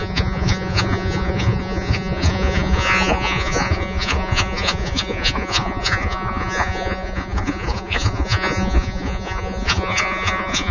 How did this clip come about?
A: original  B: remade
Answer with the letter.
B